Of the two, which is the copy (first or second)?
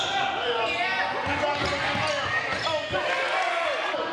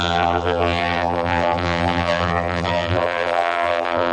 second